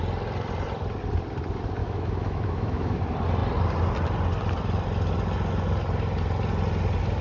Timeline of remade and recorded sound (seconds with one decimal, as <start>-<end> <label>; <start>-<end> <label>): 0.0-1.8 recorded; 1.8-3.0 remade; 3.0-7.2 recorded